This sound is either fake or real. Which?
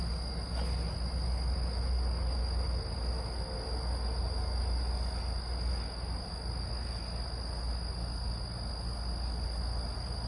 real